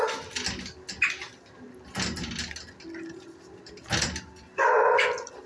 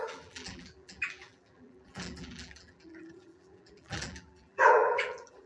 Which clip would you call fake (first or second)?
second